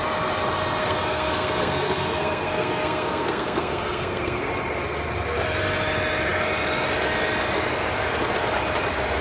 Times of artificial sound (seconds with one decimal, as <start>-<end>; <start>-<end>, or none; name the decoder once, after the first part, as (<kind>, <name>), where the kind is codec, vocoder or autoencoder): 0.8-4.5 (codec, SNAC)